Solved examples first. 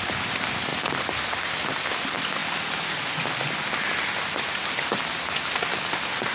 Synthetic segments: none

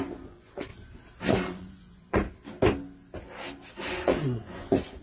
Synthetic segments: 0.0-0.7 (vocoder, Vocos); 1.3-2.2; 3.8-5.0

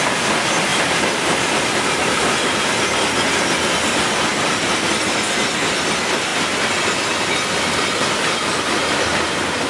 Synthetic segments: 0.7-2.3 (vocoder, BigVGAN v2); 4.3-4.9

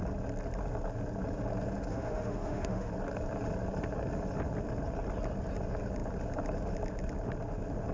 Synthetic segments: 1.9-2.9 (autoencoder, DAC-VAE)